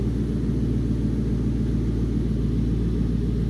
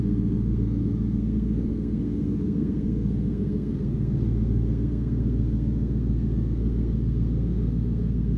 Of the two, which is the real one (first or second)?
first